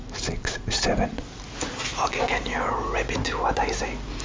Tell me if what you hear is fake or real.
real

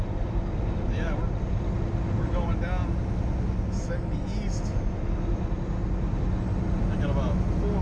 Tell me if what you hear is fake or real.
real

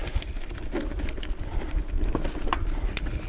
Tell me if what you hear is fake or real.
real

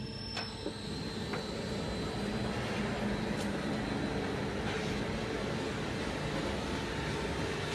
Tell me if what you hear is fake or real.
real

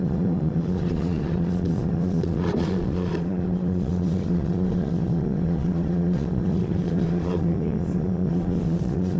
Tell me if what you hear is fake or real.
fake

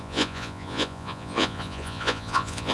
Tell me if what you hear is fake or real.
fake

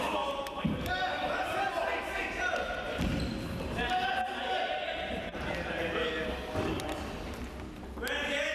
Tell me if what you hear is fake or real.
real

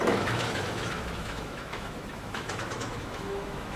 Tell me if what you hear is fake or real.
fake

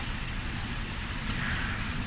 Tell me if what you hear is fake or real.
fake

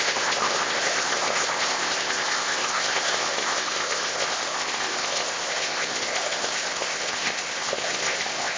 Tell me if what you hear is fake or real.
fake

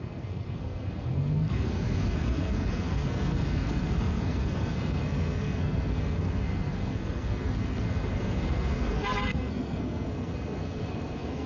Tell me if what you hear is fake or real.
fake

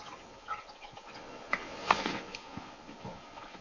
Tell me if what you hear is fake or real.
fake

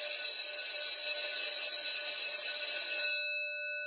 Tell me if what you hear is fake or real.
real